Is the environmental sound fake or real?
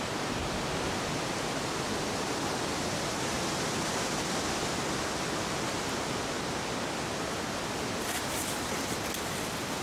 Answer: real